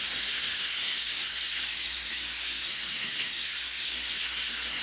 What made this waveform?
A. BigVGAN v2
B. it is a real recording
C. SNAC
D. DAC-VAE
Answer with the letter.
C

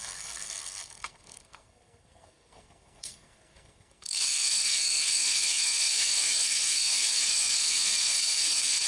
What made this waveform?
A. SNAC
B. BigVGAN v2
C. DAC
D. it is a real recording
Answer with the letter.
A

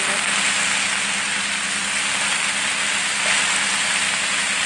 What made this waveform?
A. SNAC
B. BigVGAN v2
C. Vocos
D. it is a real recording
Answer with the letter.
D